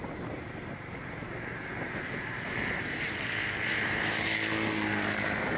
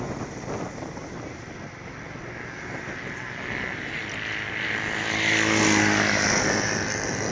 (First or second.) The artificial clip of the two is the first